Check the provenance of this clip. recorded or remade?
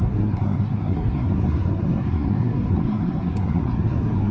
remade